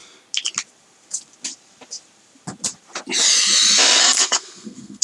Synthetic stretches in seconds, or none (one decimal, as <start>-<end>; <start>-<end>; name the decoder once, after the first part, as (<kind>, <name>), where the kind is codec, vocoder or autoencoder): 4.0-5.0 (codec, SNAC)